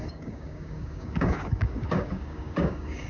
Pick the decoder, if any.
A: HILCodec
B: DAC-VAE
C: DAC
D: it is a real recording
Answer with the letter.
C